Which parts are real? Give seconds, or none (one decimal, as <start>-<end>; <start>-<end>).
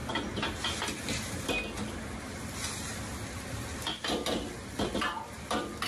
0.0-5.9